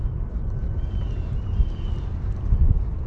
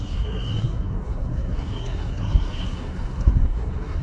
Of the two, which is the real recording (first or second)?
first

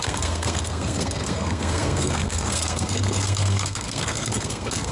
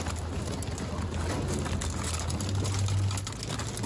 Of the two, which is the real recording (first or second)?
second